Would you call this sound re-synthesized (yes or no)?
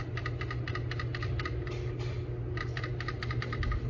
no